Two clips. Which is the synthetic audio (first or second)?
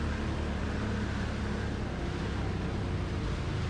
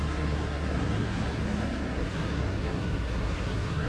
second